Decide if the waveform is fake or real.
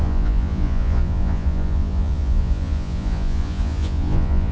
fake